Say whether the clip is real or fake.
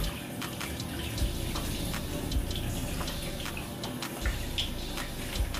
real